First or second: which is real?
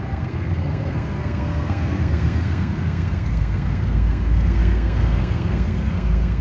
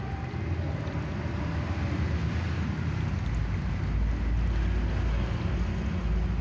second